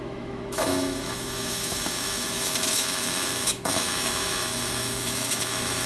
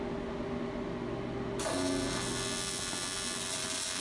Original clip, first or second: second